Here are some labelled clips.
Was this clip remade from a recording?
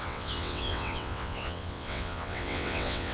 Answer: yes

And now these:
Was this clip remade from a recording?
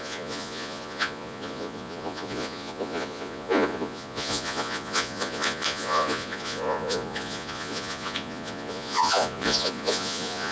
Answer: yes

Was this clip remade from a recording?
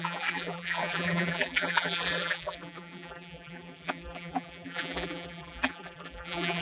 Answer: yes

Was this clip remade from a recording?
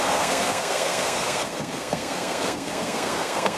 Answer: yes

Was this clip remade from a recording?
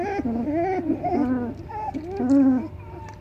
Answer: no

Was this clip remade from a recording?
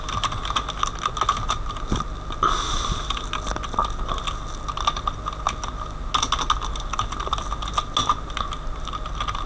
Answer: no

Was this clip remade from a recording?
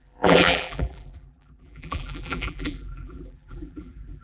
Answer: yes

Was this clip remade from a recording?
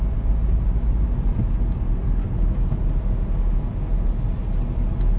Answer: no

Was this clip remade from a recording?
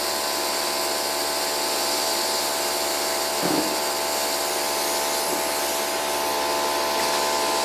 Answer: no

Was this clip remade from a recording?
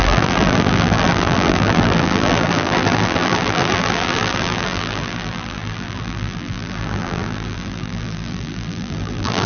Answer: yes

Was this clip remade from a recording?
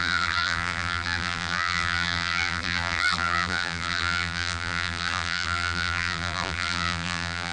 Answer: yes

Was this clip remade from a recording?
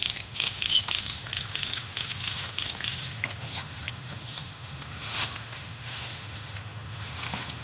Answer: yes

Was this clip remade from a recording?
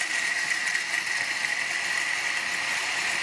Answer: no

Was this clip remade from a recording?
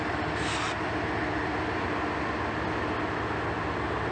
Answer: no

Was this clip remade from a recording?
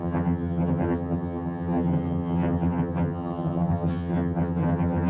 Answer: yes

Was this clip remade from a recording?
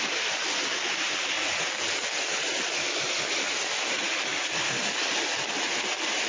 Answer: no